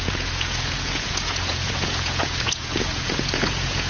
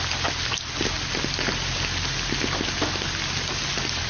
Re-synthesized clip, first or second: first